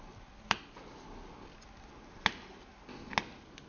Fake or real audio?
real